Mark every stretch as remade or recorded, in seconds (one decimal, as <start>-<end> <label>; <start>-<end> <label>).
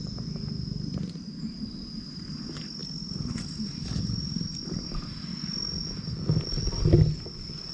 0.0-7.7 recorded